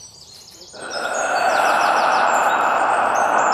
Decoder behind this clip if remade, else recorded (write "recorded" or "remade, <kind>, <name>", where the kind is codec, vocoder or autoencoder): remade, vocoder, BigVGAN v2